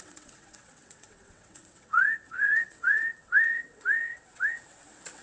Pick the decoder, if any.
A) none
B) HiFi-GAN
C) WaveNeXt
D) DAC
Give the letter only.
C